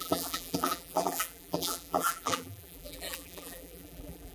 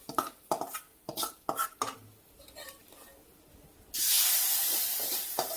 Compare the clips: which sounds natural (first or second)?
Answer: second